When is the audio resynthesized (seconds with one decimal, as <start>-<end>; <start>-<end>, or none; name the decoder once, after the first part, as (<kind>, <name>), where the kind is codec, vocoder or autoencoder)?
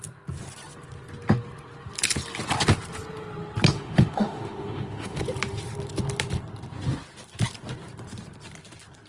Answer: 3.7-5.2 (autoencoder, DAC-VAE)